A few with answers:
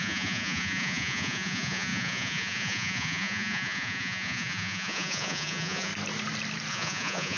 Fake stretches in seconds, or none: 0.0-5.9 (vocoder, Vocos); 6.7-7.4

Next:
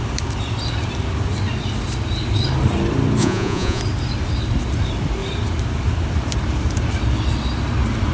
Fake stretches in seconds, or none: 3.2-3.8 (vocoder, Vocos)